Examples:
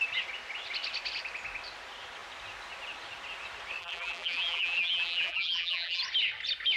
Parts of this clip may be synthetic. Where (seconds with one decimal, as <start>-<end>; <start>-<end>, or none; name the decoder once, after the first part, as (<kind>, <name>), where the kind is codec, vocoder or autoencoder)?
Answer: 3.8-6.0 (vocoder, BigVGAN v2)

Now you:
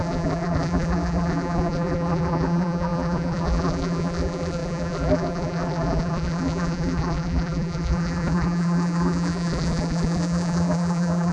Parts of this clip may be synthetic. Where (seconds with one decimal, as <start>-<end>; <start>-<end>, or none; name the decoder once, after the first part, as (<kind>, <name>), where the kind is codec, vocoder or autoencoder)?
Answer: 0.0-11.3 (vocoder, BigVGAN v2)

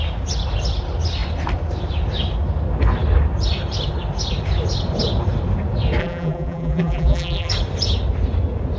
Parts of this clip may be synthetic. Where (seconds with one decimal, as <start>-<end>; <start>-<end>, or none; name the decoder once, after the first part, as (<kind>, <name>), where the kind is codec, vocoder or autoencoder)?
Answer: 6.0-7.5 (vocoder, BigVGAN v2)

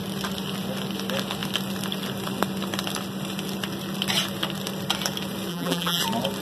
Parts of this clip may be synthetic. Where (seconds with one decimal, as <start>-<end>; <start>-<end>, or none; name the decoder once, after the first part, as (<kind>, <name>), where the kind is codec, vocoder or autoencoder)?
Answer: 5.5-6.0 (vocoder, BigVGAN v2)

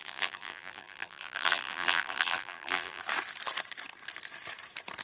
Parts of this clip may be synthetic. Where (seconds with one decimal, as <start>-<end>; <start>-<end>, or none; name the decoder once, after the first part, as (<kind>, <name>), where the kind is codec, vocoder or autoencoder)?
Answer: 0.0-3.0 (vocoder, BigVGAN v2)